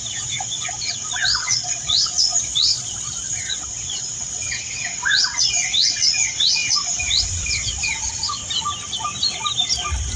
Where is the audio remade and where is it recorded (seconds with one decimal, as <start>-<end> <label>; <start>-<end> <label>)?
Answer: 0.0-8.4 remade; 8.4-10.2 recorded